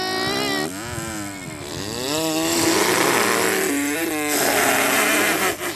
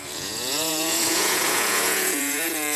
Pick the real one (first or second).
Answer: first